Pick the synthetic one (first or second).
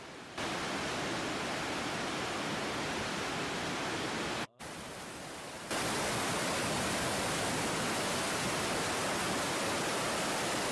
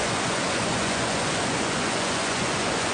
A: second